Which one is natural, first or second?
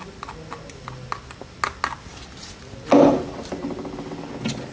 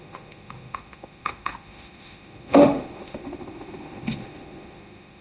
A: first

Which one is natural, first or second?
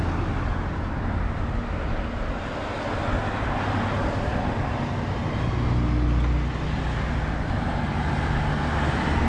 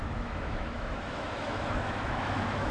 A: first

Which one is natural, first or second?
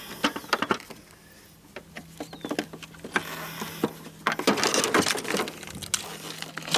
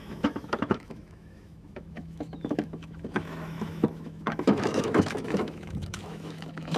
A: first